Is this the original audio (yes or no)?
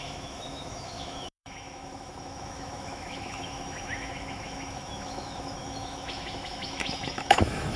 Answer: no